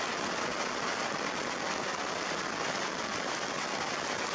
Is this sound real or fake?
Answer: real